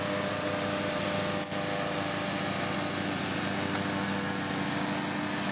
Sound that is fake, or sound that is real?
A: real